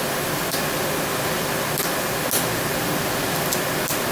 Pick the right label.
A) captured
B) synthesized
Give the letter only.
A